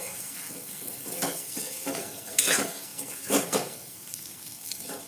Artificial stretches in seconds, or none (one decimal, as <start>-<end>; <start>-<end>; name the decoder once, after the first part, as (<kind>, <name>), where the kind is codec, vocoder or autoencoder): 0.0-5.1 (codec, SNAC)